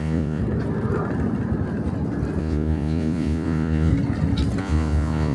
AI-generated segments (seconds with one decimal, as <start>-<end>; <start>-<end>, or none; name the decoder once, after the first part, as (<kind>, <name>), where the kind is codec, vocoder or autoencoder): 0.0-0.4 (vocoder, Vocos); 2.4-3.9; 4.6-5.3